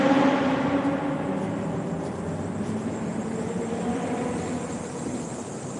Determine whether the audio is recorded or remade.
recorded